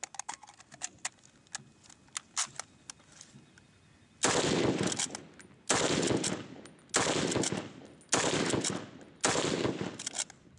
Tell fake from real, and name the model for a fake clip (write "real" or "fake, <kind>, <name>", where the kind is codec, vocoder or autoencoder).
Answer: real